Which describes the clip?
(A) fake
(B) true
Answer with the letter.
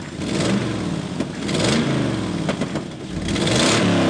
B